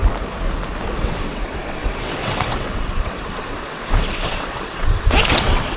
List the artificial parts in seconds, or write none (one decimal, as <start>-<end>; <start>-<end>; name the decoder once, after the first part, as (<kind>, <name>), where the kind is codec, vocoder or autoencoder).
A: 1.0-5.8 (vocoder, WaveNeXt)